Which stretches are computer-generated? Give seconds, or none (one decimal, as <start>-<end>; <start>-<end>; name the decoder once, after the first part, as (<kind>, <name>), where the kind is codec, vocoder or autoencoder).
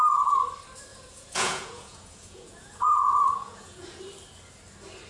0.9-4.0 (vocoder, Vocos)